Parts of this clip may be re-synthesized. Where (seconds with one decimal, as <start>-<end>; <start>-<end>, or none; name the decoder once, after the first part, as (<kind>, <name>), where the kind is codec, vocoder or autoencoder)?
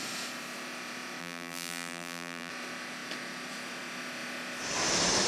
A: 1.2-2.5 (vocoder, BigVGAN v2)